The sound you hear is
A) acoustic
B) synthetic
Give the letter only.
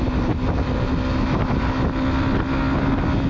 A